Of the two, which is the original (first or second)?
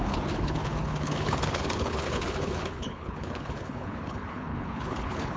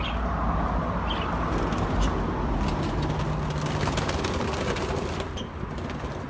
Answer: second